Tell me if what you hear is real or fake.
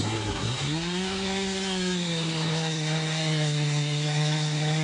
fake